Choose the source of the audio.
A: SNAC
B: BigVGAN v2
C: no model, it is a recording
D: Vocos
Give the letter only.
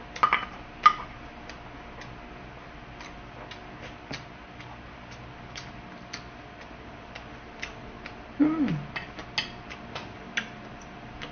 C